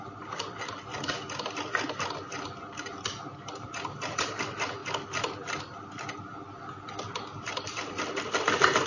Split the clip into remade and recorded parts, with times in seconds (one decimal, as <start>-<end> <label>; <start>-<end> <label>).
0.0-8.9 recorded